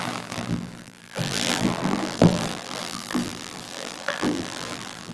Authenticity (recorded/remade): remade